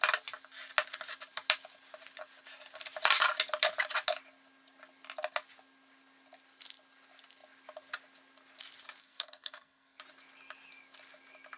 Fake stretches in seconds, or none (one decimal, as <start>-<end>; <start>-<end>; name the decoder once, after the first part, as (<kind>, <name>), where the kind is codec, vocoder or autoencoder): 9.0-10.0 (codec, SNAC)